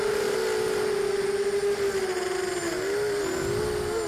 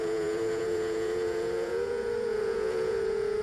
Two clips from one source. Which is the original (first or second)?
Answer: first